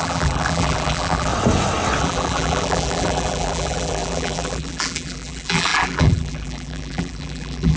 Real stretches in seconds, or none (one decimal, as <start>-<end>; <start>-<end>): 1.3-2.0